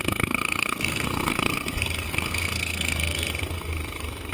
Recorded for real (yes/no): no